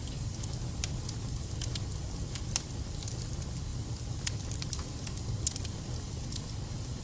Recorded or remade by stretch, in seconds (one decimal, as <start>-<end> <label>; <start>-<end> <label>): 0.0-7.0 recorded